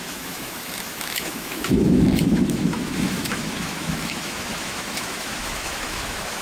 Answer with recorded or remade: remade